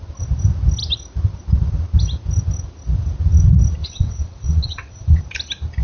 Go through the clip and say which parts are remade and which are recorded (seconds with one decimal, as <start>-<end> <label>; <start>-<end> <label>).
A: 0.0-3.8 recorded; 3.8-5.2 remade; 5.2-5.8 recorded